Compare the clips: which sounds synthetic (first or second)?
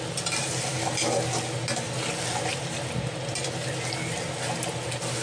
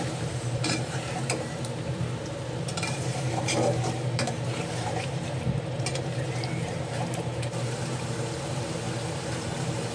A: second